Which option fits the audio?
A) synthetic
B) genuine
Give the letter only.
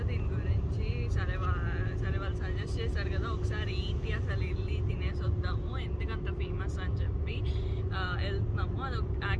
B